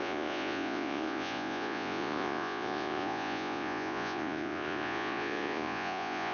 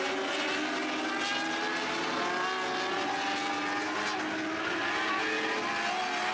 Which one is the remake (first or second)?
first